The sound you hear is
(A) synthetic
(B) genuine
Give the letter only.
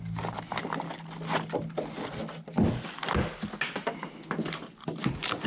B